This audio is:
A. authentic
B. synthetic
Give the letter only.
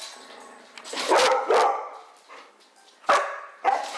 A